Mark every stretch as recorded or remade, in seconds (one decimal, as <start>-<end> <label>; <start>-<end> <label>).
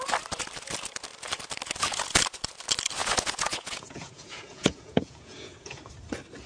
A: 0.0-3.0 recorded; 3.0-5.9 remade; 5.9-6.5 recorded